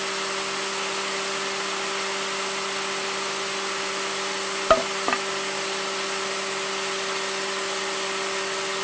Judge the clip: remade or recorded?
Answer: recorded